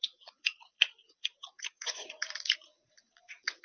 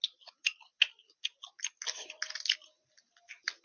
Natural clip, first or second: second